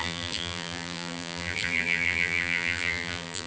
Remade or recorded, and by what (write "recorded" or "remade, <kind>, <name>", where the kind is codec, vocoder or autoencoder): remade, vocoder, BigVGAN v2